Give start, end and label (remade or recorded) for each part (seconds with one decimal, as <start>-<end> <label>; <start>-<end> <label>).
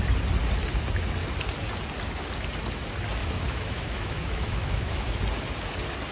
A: 0.0-3.2 recorded; 3.2-5.2 remade; 5.2-6.1 recorded